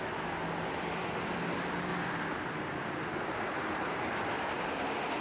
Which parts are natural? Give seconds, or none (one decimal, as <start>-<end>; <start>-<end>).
0.0-5.2

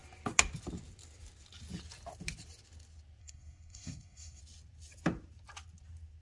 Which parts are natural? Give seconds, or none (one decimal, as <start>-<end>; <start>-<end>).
0.0-3.2; 4.4-6.2

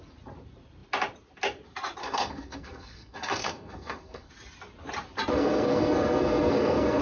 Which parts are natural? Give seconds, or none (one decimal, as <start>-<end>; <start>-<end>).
0.0-2.0; 4.3-5.3

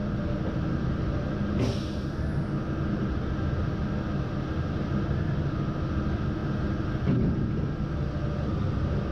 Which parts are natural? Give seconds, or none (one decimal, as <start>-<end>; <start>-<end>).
0.0-9.1